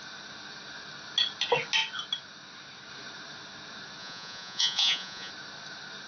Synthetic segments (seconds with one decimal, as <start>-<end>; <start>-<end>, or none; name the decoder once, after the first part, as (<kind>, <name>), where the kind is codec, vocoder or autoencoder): 4.0-5.3 (vocoder, Vocos)